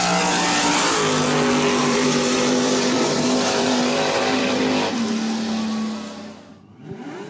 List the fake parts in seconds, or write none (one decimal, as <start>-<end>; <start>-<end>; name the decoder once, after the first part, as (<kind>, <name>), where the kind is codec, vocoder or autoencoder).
1.8-4.6 (vocoder, BigVGAN v2)